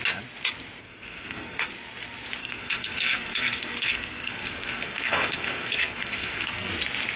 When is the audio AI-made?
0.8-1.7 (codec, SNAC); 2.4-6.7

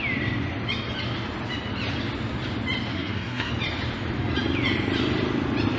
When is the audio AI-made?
2.9-3.5 (codec, SNAC)